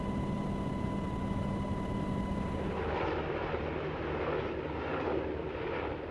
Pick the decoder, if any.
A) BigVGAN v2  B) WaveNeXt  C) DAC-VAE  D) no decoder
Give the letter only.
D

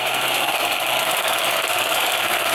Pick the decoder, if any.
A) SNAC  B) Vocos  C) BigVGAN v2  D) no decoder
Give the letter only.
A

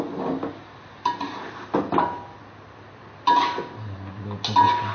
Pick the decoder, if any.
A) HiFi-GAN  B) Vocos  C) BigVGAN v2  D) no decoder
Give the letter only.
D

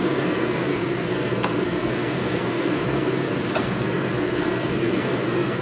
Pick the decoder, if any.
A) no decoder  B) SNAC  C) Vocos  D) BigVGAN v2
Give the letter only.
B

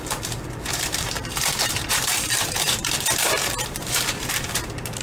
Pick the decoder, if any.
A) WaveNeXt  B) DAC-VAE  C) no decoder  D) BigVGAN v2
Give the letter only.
D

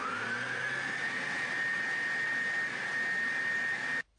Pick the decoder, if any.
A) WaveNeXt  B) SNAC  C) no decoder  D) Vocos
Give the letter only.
C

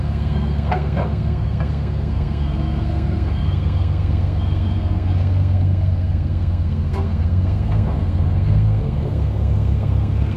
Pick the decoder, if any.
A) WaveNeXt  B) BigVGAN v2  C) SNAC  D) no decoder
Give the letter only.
C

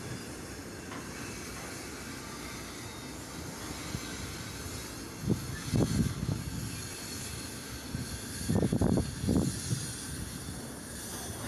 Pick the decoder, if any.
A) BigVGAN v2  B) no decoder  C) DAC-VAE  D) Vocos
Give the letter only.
B